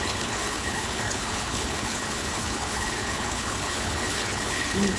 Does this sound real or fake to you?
fake